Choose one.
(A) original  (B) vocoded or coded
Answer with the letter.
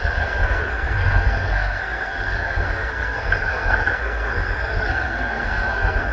B